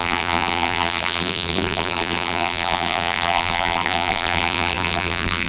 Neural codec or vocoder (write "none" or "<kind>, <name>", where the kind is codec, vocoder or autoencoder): vocoder, BigVGAN v2